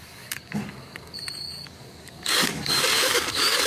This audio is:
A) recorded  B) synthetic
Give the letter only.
B